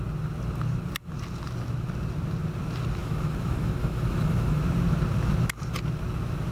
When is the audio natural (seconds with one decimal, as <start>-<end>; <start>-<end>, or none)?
0.0-3.0; 4.6-6.5